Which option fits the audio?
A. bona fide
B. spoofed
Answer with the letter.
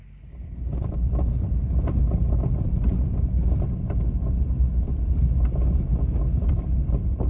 A